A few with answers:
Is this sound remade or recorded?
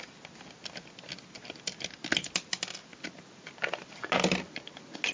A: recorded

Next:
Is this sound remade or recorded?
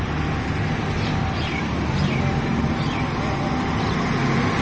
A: recorded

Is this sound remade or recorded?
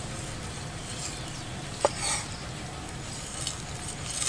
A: recorded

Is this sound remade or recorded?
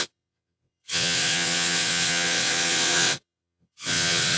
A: remade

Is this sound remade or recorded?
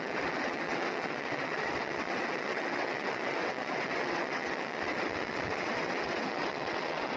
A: remade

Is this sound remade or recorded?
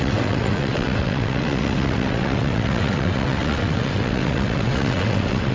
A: remade